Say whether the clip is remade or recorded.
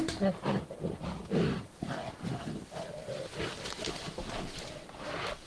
recorded